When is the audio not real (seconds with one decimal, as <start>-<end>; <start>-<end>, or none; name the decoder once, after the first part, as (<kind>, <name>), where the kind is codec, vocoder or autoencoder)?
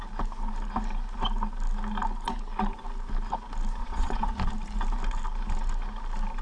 3.8-4.4 (vocoder, Vocos)